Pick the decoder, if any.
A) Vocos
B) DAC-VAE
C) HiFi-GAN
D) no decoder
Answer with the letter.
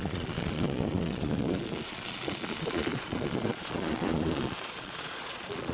A